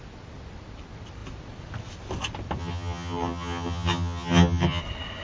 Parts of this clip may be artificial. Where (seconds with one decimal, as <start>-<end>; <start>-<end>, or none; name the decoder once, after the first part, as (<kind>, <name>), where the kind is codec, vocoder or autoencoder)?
2.6-4.8 (vocoder, HiFi-GAN)